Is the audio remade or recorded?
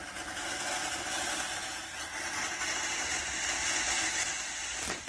recorded